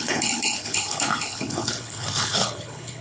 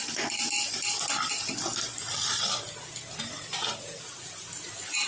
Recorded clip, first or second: second